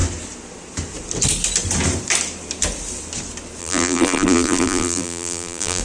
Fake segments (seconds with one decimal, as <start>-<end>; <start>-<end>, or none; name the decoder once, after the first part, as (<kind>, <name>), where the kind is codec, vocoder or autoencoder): 3.6-5.8 (vocoder, BigVGAN v2)